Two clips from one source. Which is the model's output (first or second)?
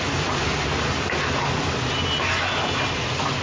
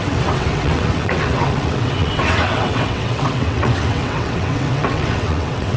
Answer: second